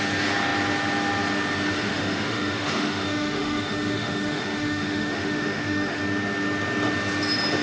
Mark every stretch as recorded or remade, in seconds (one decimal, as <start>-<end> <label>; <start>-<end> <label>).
0.0-1.7 recorded; 1.7-6.0 remade; 6.0-7.6 recorded